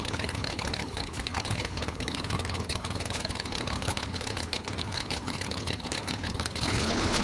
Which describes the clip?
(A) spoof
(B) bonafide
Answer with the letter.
A